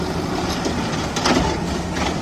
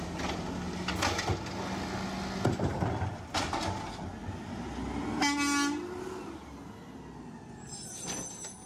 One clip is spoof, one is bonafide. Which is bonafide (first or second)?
second